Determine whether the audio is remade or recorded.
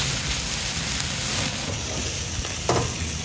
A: recorded